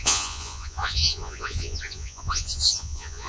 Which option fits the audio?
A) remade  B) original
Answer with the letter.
A